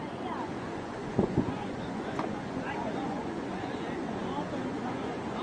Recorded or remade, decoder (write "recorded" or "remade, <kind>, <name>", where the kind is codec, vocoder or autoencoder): remade, vocoder, Vocos